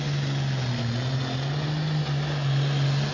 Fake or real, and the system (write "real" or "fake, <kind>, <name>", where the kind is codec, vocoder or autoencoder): real